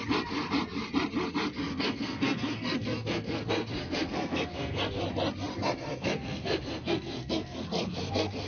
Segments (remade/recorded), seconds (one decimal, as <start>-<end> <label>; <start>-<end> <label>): 0.0-1.7 recorded; 1.7-5.0 remade; 5.0-5.5 recorded; 5.5-8.5 remade